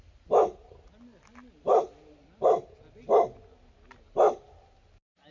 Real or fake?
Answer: real